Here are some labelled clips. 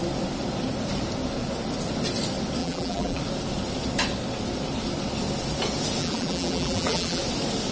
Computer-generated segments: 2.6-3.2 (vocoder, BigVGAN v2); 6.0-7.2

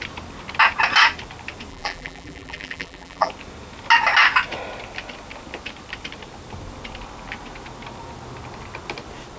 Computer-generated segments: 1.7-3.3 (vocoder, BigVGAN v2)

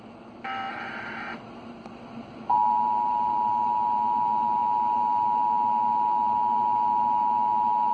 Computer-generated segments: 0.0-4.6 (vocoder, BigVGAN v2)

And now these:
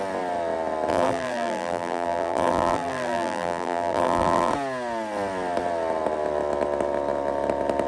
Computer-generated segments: 0.9-4.5 (vocoder, BigVGAN v2)

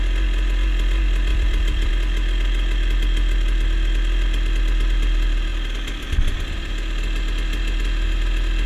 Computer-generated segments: 1.3-1.9 (vocoder, BigVGAN v2); 5.5-6.7

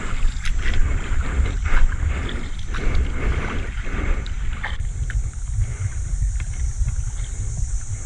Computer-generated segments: 0.8-2.3 (vocoder, BigVGAN v2)

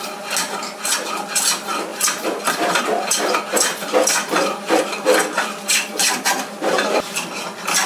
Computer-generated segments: 1.9-2.8 (vocoder, BigVGAN v2); 4.2-6.3

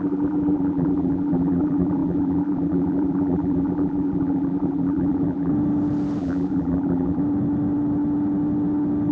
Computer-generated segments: 0.0-5.5 (vocoder, BigVGAN v2); 6.2-7.2